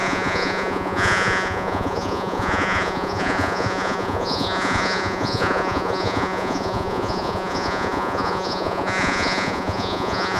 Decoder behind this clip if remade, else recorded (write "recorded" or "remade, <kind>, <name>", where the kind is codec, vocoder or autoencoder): remade, vocoder, Vocos